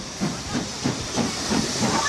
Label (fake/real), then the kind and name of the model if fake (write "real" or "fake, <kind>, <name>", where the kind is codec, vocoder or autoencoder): fake, vocoder, BigVGAN v2